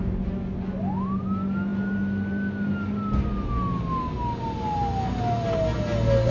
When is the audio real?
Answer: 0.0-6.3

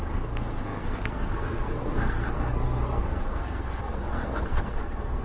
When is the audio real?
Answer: none

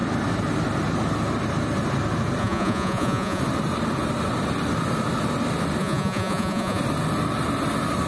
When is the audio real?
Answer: 0.0-2.4; 3.4-5.8; 6.8-8.1

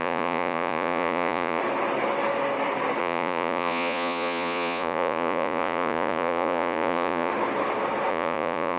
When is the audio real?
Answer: 1.6-3.0; 7.3-8.1